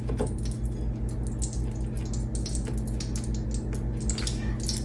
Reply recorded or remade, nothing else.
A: recorded